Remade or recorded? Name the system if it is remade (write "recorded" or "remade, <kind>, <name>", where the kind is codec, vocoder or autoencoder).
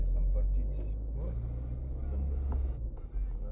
recorded